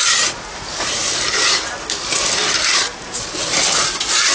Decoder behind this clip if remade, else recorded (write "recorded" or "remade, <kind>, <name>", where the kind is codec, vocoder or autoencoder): recorded